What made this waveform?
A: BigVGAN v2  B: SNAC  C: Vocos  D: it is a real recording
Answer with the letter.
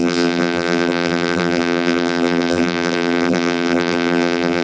A